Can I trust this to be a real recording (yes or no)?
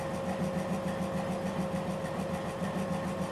yes